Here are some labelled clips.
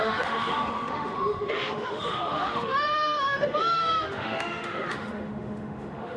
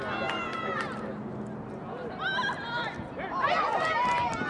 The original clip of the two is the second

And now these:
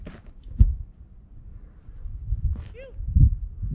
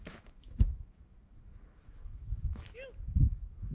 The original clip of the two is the first